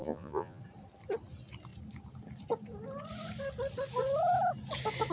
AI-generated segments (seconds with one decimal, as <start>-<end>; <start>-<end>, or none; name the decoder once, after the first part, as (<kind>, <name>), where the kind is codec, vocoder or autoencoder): 0.0-0.6 (vocoder, Vocos)